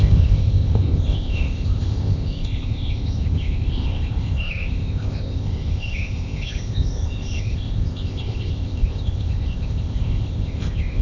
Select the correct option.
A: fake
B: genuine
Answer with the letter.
A